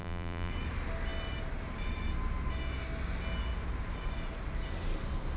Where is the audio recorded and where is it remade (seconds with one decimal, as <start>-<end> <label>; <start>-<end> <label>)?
0.0-0.5 remade; 0.5-5.4 recorded